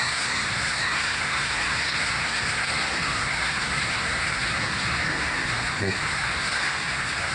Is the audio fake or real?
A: fake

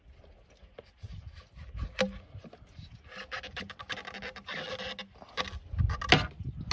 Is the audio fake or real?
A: real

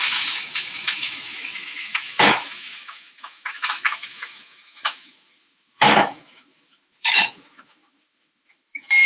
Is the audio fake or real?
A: fake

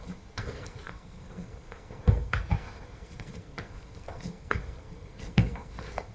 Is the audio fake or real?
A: fake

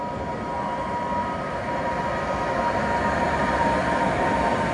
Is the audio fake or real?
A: real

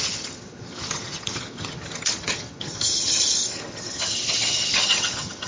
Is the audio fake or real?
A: fake